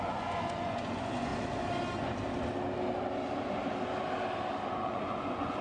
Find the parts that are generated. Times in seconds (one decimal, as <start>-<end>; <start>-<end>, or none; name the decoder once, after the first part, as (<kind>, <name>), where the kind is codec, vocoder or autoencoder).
0.0-1.3 (vocoder, Vocos); 4.7-5.6